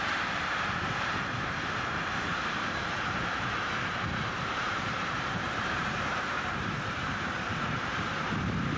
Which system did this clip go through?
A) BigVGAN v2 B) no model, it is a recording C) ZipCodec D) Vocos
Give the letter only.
A